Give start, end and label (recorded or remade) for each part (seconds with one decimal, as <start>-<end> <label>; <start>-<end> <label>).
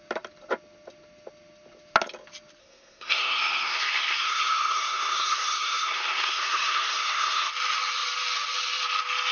0.0-2.6 recorded; 2.6-7.5 remade; 7.5-9.3 recorded